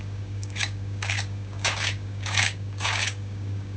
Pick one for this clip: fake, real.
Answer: fake